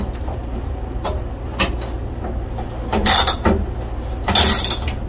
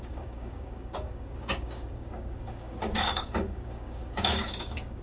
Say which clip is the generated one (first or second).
second